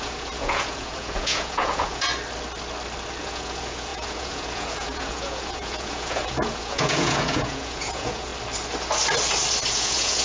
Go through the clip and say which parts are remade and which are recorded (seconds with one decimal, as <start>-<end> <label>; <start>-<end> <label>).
0.0-2.1 remade; 2.1-3.2 recorded; 3.2-8.3 remade; 8.3-9.7 recorded; 9.7-10.2 remade